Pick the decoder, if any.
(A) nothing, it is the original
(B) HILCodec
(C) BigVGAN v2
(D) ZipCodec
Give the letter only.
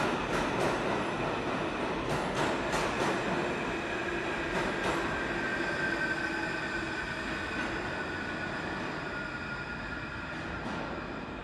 A